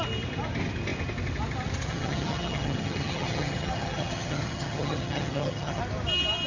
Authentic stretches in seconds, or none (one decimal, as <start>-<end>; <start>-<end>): 0.0-1.9; 5.8-6.5